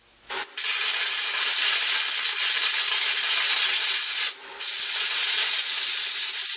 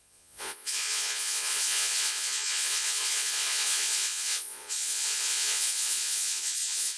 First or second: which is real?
first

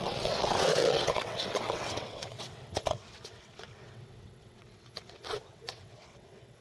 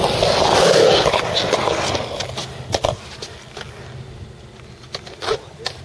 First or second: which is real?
second